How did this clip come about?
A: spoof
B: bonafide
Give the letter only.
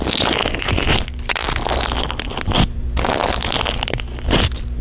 A